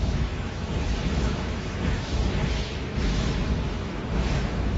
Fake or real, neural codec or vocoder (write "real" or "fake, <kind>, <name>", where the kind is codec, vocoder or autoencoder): fake, autoencoder, DAC-VAE